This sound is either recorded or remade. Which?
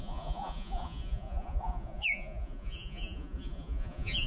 remade